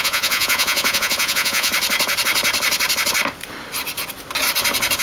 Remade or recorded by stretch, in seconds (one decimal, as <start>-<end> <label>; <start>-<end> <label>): 0.0-1.7 remade; 1.7-5.0 recorded